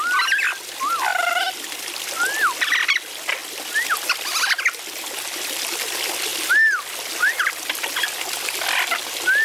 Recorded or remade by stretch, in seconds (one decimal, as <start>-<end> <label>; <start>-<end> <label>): 0.0-9.4 recorded